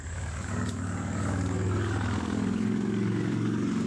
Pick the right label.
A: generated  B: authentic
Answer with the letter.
A